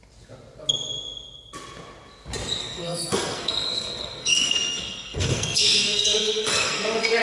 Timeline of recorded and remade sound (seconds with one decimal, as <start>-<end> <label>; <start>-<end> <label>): 0.0-2.6 recorded; 2.6-7.2 remade